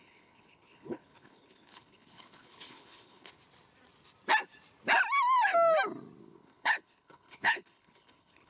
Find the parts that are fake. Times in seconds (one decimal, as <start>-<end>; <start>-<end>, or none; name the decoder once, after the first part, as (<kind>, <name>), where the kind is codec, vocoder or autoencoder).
0.0-3.3 (codec, HILCodec); 6.2-8.5